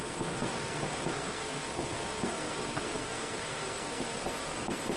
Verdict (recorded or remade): remade